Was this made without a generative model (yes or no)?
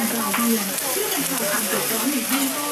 yes